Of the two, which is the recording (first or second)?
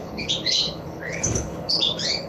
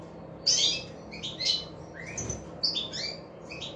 second